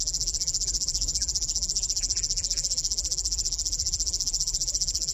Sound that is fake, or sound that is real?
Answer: fake